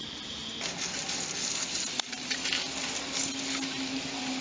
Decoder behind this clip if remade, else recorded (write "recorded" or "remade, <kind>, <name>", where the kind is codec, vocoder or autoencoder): recorded